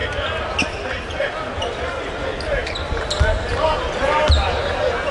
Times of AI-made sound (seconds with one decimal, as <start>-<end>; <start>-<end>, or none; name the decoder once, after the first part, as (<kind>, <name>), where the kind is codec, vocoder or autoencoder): none